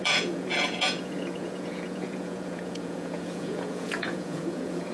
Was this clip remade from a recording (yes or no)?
yes